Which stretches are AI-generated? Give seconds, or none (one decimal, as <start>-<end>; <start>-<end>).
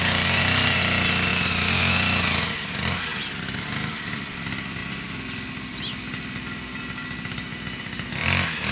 none